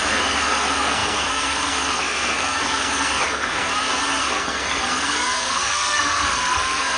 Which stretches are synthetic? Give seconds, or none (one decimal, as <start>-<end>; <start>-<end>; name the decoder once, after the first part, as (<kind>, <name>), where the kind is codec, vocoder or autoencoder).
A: 0.0-3.7 (codec, SNAC); 4.2-7.0